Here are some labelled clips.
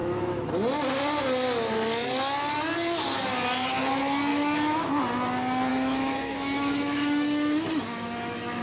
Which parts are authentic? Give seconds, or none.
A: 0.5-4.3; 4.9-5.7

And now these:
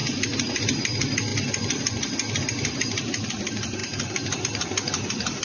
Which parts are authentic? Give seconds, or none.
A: 0.0-0.6; 1.3-2.4